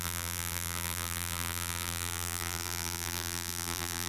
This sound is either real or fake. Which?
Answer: fake